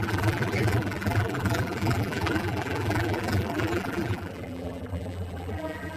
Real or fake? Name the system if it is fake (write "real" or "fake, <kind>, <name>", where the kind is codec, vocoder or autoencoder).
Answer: fake, vocoder, BigVGAN v2